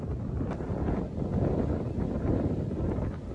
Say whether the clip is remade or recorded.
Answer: recorded